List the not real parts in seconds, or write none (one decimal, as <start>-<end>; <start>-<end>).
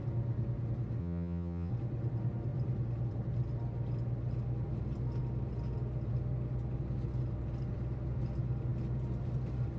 1.0-1.7